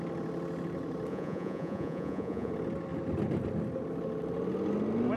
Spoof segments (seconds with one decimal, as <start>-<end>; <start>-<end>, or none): 1.1-2.5